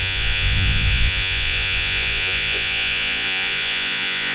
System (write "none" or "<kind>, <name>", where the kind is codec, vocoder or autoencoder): vocoder, Vocos